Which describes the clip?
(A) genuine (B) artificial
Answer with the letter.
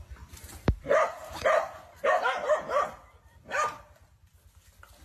A